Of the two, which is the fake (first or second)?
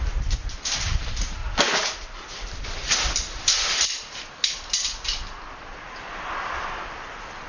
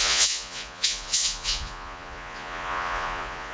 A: second